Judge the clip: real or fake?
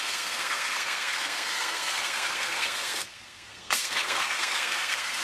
fake